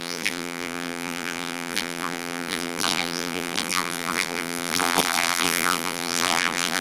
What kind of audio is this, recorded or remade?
remade